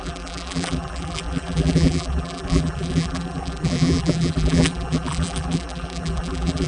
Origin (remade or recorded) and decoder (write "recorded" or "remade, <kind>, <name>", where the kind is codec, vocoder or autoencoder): remade, vocoder, BigVGAN v2